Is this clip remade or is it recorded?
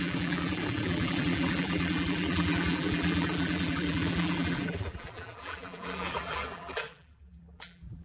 remade